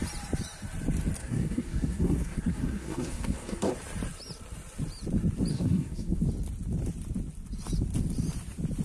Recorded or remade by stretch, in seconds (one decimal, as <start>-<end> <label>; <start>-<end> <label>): 0.0-1.2 recorded; 1.2-3.7 remade; 3.7-5.5 recorded; 5.5-6.2 remade; 6.2-8.8 recorded